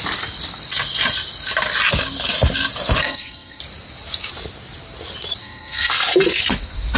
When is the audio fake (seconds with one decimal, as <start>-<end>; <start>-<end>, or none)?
3.0-3.6; 5.4-5.9